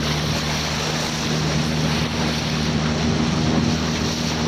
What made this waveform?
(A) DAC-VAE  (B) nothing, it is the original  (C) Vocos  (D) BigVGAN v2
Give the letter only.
B